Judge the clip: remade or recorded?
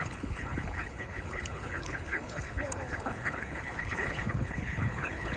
remade